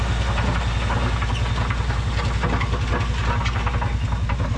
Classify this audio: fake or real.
real